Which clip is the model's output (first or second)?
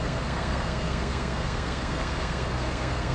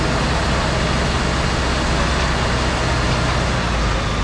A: first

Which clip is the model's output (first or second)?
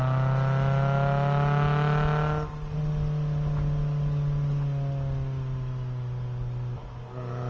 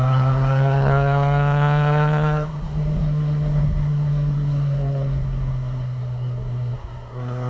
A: second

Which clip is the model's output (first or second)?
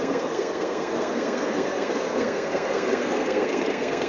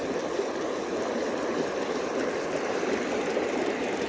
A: first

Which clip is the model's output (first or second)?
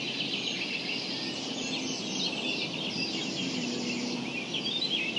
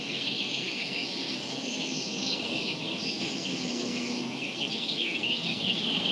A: second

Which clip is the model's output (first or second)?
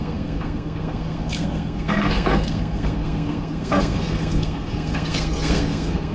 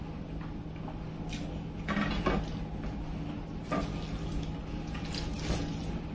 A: first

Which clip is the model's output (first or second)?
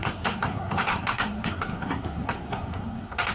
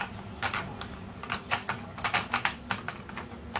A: first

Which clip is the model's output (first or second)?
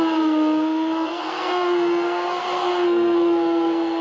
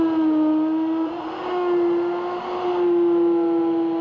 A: first